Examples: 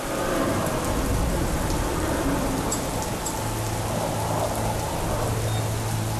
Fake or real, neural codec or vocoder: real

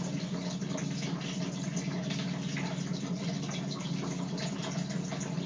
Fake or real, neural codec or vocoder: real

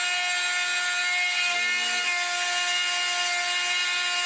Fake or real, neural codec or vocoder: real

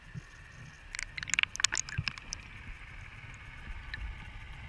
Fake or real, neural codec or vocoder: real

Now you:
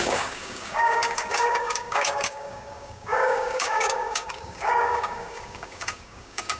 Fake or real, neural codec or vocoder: fake, codec, DAC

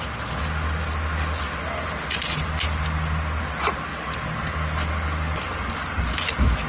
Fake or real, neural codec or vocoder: real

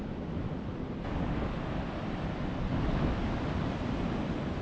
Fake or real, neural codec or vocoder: fake, vocoder, BigVGAN v2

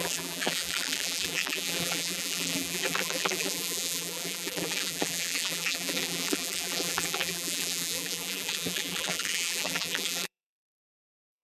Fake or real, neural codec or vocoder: fake, vocoder, BigVGAN v2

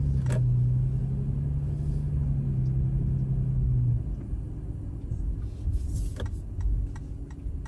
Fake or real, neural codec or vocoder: real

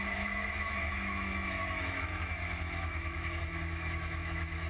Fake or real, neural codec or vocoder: fake, autoencoder, DAC-VAE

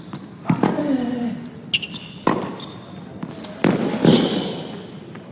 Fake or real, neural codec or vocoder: real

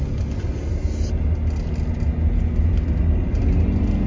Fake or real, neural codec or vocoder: real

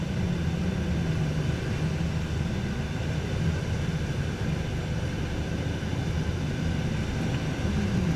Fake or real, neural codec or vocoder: real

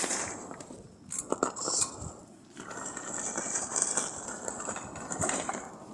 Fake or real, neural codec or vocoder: real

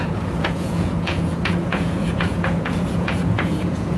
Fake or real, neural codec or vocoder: fake, vocoder, Vocos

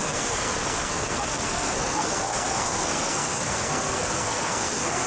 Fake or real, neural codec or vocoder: fake, codec, SNAC